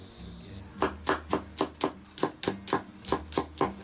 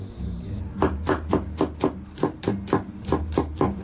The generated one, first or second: second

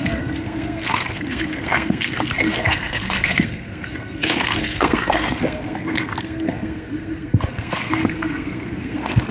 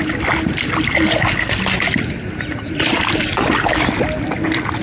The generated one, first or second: first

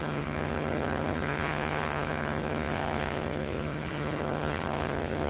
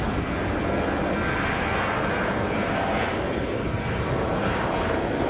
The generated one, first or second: first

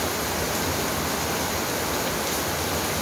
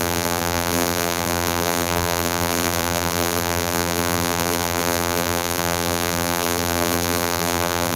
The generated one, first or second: second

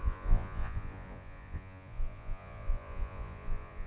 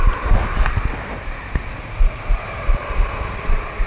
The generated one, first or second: first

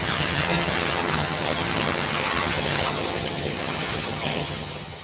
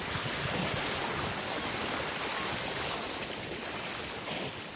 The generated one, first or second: first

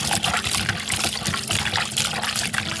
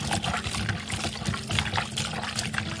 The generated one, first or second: first